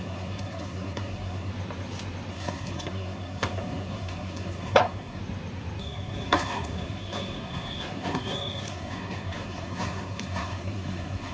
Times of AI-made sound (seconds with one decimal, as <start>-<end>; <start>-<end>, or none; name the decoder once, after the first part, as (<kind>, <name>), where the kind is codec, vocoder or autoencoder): 0.0-1.5 (codec, SNAC); 2.3-5.2; 5.8-11.3